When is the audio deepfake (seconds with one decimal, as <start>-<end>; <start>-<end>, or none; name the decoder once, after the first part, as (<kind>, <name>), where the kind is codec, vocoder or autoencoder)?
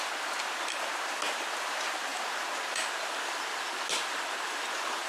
none